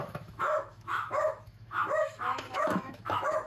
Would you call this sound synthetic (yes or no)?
yes